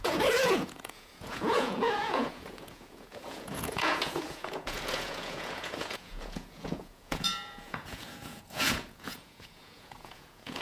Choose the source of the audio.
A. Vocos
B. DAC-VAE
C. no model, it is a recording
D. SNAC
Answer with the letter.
A